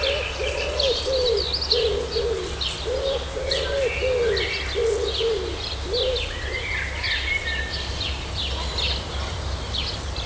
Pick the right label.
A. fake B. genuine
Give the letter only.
B